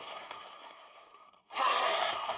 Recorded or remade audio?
remade